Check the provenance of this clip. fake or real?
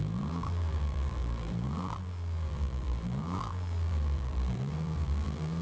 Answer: fake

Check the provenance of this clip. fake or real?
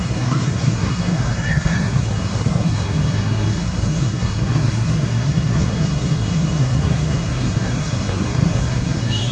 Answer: fake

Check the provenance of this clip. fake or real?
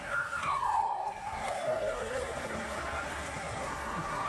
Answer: fake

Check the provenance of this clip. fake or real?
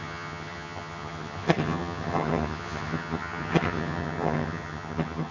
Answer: fake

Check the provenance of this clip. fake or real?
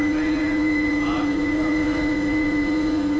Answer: fake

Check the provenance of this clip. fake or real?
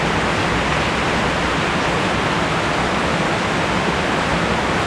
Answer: real